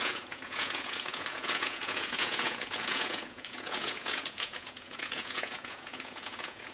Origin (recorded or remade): remade